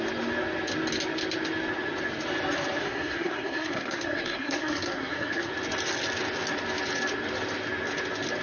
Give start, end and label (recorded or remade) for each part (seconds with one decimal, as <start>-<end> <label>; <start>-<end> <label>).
0.0-2.8 recorded; 2.8-5.5 remade; 5.5-8.4 recorded